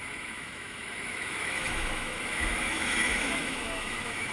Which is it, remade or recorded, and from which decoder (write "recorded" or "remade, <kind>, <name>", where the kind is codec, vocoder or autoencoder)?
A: remade, autoencoder, DAC-VAE